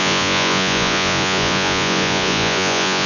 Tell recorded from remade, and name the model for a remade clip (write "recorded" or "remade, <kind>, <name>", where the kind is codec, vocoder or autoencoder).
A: remade, vocoder, Vocos